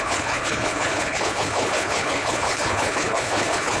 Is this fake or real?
fake